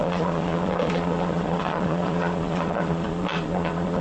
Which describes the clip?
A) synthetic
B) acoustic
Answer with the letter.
A